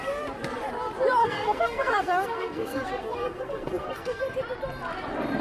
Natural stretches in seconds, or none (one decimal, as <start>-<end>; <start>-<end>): 0.0-1.2; 4.2-5.4